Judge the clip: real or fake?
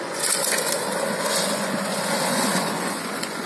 fake